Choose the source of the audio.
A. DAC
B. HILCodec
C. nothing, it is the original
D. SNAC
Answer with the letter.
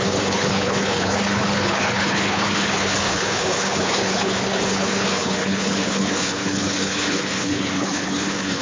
B